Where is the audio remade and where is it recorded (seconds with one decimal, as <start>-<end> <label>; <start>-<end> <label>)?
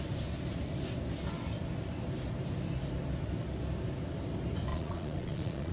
0.0-4.7 recorded; 4.7-5.7 remade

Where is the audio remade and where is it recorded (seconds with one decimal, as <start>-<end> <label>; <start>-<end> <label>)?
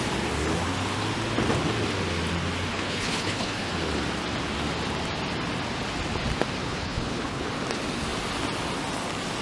0.0-2.7 recorded; 2.7-3.7 remade; 3.7-6.6 recorded; 6.6-7.5 remade; 7.5-9.4 recorded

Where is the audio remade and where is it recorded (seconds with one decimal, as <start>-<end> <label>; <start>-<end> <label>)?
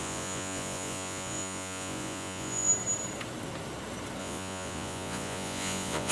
0.0-2.7 remade; 2.7-4.2 recorded; 4.2-6.1 remade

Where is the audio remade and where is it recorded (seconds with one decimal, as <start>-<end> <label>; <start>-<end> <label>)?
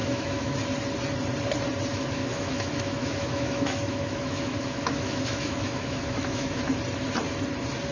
0.0-0.6 remade; 0.6-1.9 recorded; 1.9-6.6 remade; 6.6-7.9 recorded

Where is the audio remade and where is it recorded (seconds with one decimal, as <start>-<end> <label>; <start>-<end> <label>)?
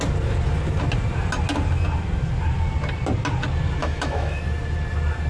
0.0-3.8 recorded; 3.8-4.4 remade; 4.4-5.3 recorded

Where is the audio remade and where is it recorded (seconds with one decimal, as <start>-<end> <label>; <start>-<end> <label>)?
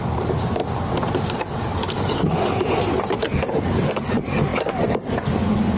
0.0-0.6 remade; 0.6-1.4 recorded; 1.4-2.8 remade; 2.8-3.5 recorded; 3.5-5.8 remade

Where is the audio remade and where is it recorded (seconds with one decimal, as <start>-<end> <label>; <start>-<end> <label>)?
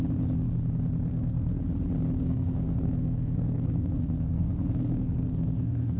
0.0-1.1 recorded; 1.1-1.6 remade; 1.6-2.2 recorded; 2.2-6.0 remade